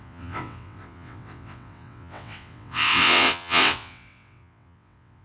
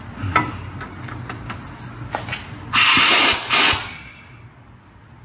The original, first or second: second